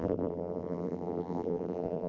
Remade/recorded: remade